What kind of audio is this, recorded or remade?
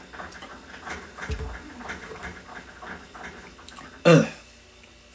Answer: recorded